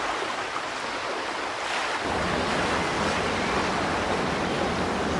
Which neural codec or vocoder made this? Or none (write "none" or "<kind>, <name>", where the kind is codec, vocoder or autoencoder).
none